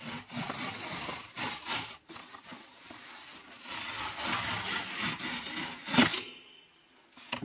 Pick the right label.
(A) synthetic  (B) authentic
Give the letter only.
B